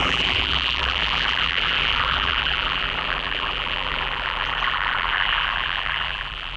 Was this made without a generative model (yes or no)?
no